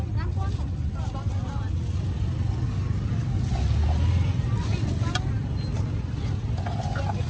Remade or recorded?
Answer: recorded